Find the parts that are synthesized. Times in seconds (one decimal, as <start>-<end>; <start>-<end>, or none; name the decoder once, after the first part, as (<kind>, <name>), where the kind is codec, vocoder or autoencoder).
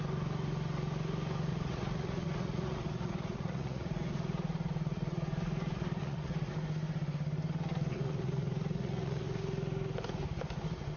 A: 1.5-6.5 (vocoder, Vocos); 7.7-9.4